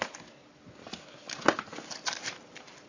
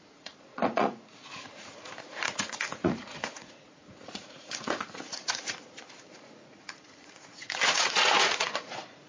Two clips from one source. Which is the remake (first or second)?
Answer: second